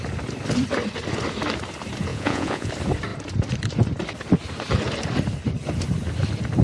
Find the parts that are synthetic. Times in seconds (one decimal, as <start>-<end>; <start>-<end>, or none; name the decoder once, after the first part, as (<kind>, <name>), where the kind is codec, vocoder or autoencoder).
2.1-2.7 (vocoder, Vocos)